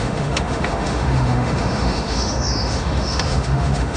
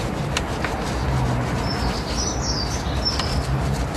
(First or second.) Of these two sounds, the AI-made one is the first